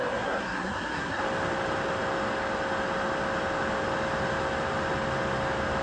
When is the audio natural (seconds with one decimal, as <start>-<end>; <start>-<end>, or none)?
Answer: 1.2-5.8